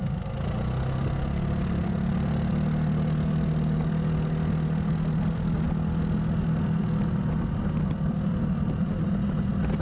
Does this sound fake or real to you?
real